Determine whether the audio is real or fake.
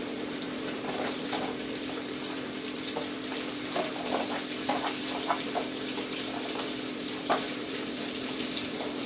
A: fake